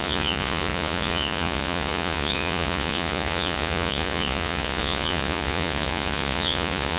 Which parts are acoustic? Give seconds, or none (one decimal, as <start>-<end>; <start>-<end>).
none